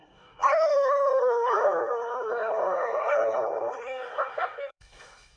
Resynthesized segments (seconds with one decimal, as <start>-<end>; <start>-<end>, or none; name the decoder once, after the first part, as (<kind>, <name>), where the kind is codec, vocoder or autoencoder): 0.0-5.4 (codec, SNAC)